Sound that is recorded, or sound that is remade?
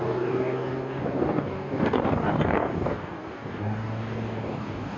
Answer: remade